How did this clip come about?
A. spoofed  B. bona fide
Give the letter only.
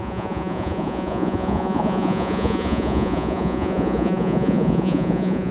A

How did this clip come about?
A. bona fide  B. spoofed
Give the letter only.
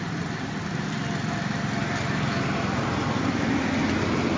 A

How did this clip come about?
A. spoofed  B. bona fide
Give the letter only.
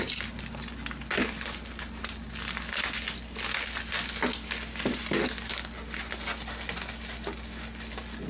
B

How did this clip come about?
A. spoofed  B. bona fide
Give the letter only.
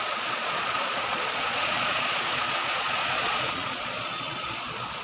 A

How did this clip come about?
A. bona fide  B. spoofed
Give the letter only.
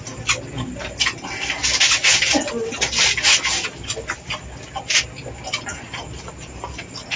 A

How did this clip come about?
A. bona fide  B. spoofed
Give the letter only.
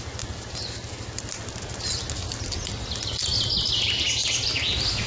A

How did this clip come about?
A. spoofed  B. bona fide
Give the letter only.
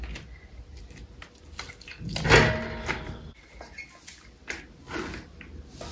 B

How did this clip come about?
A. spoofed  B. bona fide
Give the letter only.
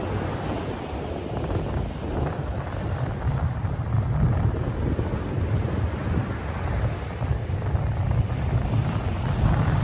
B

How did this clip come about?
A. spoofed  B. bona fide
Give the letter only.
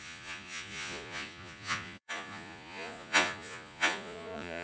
A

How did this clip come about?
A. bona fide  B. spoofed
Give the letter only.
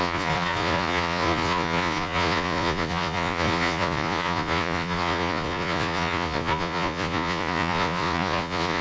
B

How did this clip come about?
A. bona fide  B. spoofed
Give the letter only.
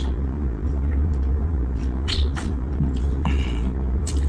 B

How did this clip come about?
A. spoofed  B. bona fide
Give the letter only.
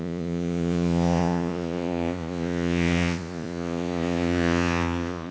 A